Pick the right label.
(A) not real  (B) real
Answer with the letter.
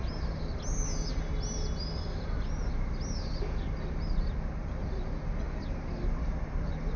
B